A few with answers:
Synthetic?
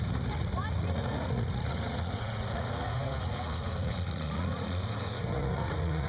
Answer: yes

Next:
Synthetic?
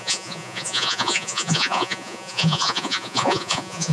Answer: yes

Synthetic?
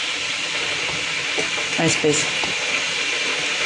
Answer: no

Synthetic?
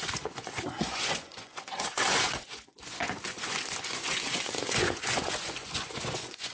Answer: yes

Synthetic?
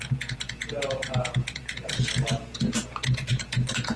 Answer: yes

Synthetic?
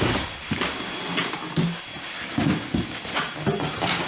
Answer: no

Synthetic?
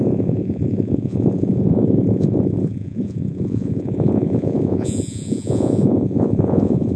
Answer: yes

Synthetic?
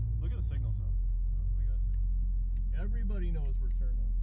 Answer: no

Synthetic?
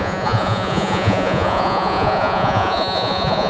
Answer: yes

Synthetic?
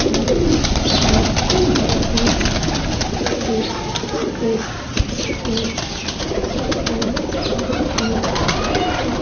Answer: no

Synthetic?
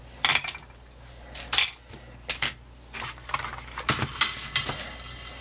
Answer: no